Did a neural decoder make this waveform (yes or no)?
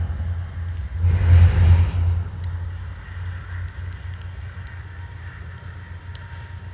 no